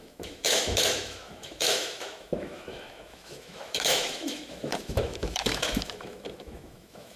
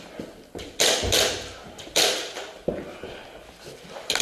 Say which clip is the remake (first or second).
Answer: first